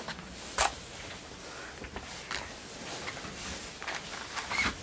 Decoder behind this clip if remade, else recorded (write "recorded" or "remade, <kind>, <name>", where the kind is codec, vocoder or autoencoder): recorded